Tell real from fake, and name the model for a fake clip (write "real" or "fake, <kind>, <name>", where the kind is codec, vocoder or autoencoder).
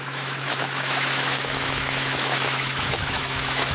fake, autoencoder, DAC-VAE